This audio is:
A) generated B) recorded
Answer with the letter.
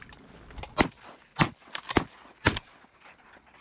B